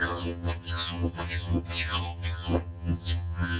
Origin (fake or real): fake